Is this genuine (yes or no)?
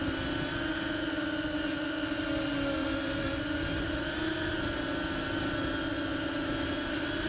yes